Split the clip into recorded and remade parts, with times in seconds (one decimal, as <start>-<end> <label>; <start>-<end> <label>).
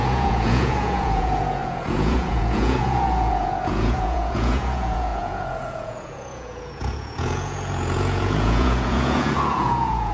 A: 0.0-10.1 remade